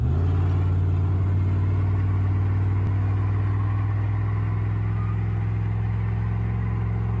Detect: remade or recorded recorded